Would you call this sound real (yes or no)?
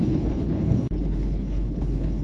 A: no